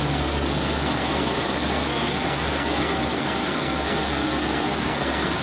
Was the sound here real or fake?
fake